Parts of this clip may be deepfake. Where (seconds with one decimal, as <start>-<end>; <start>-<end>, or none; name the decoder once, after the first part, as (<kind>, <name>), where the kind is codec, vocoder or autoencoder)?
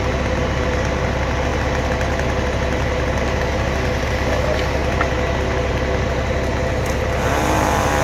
none